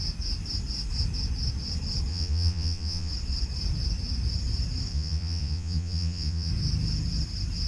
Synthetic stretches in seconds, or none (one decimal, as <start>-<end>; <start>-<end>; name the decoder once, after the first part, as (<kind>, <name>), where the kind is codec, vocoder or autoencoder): 2.1-3.1 (vocoder, Vocos); 4.9-6.5